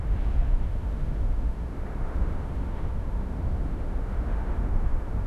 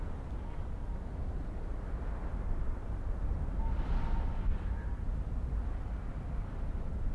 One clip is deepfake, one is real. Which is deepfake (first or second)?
first